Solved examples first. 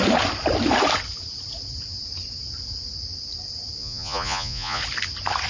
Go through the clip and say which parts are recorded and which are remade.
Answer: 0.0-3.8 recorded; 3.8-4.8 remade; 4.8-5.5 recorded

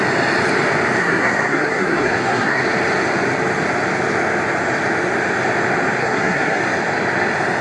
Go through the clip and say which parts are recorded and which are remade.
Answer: 0.0-1.0 recorded; 1.0-2.6 remade; 2.6-6.0 recorded; 6.0-6.6 remade; 6.6-7.6 recorded

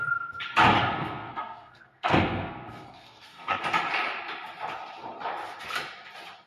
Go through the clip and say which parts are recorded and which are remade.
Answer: 0.0-0.8 recorded; 0.8-3.6 remade; 3.6-6.5 recorded

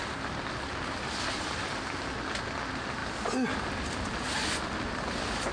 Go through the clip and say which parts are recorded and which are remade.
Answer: 0.0-5.5 recorded

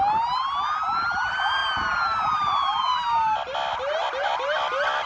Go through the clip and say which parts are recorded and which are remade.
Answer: 0.0-5.1 recorded

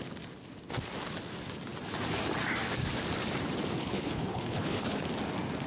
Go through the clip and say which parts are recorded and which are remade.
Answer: 0.0-3.8 recorded; 3.8-5.0 remade; 5.0-5.7 recorded

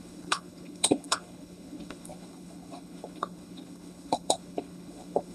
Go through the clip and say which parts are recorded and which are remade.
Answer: 0.0-5.3 remade